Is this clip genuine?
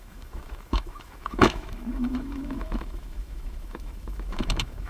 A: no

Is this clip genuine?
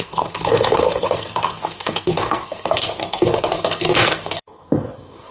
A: no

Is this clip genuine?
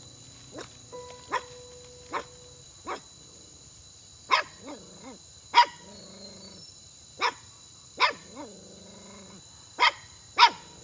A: yes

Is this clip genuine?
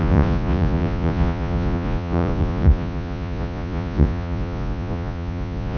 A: no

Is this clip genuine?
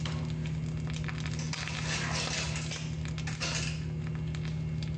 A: yes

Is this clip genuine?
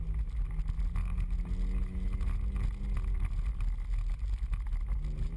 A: yes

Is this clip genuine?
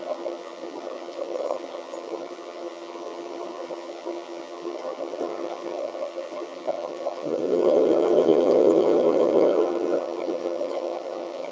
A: no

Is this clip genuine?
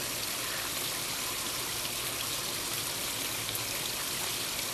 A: yes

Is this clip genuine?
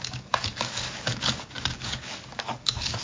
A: no